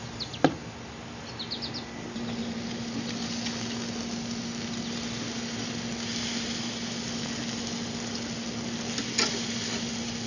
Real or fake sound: real